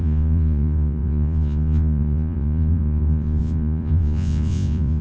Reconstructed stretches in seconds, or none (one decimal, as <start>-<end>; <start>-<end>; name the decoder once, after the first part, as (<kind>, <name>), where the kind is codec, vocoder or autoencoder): 0.0-5.0 (vocoder, Vocos)

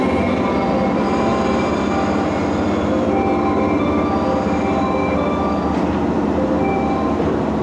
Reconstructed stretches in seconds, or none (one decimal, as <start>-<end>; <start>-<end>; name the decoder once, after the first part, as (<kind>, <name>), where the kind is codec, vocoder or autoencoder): none

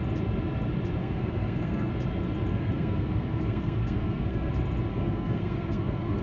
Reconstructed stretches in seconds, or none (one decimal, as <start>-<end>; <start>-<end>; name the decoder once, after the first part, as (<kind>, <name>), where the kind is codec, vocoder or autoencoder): 1.0-1.9 (codec, SNAC); 2.5-4.5; 4.9-6.2

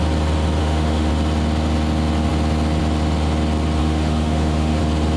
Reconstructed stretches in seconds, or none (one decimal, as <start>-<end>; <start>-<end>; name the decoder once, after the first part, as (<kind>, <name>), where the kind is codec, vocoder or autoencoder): 0.6-1.1 (autoencoder, DAC-VAE); 3.8-4.8

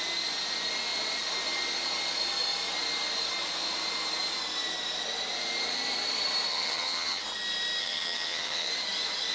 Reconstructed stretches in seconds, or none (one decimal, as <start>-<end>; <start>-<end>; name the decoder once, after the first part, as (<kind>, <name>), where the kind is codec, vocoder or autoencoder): 6.5-7.2 (vocoder, HiFi-GAN); 7.8-8.7

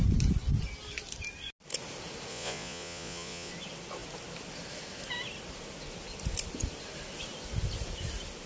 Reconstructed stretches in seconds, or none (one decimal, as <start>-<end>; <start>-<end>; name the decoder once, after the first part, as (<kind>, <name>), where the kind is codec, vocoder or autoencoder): 2.3-3.5 (vocoder, Vocos)

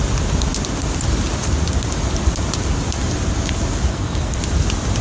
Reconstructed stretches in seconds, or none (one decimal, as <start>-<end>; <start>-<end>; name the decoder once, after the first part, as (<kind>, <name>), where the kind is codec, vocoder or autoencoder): 3.9-4.4 (codec, SNAC)